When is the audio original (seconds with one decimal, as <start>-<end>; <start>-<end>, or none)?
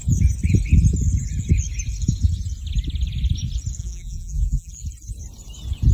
0.0-3.8; 4.7-5.9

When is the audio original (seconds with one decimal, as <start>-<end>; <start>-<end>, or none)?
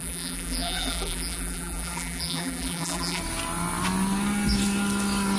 3.2-5.4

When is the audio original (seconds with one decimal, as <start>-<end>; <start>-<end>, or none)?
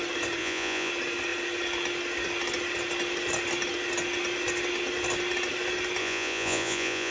0.0-0.4; 0.9-6.0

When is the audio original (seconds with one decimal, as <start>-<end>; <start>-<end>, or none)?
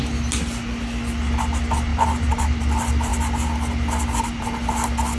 0.0-1.9; 2.6-5.2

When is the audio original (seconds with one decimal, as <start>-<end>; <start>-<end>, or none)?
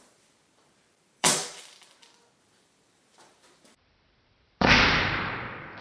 1.4-2.4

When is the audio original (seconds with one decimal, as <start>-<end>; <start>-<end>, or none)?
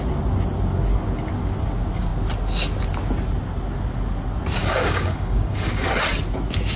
0.0-4.6; 5.9-6.8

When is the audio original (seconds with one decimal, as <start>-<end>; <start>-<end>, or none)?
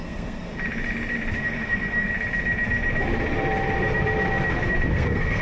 0.5-1.4; 2.1-4.9